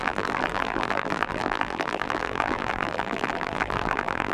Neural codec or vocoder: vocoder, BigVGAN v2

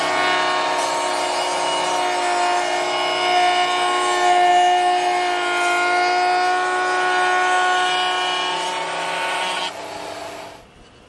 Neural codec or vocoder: none